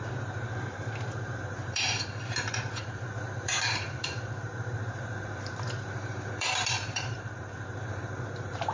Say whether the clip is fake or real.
fake